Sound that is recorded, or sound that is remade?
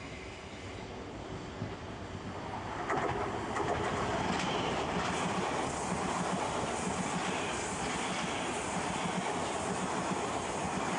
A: recorded